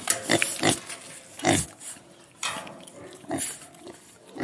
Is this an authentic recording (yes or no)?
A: yes